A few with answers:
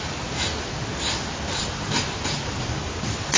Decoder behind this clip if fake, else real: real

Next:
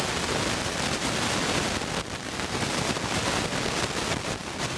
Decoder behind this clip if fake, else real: real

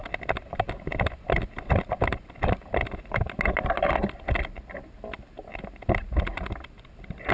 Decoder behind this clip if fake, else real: real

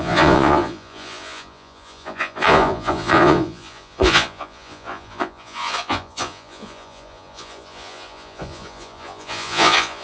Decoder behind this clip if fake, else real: fake, vocoder, Vocos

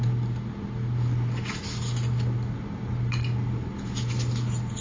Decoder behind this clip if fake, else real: real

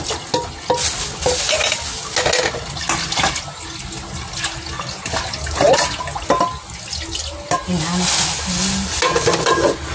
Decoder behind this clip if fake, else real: real